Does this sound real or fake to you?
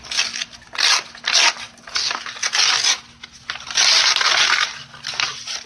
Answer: real